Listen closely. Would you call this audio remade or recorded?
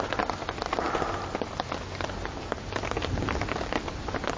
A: recorded